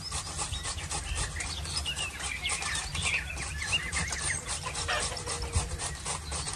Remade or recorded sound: recorded